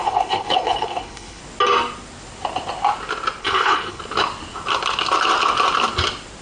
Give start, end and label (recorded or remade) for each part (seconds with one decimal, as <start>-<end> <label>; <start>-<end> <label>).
0.0-1.4 remade; 1.4-3.4 recorded; 3.4-4.0 remade; 4.0-6.4 recorded